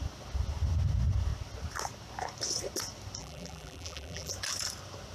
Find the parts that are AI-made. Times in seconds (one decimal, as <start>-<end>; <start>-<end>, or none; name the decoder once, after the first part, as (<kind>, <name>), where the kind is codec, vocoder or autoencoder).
3.2-4.3 (vocoder, BigVGAN v2)